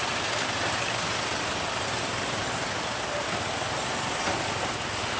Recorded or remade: recorded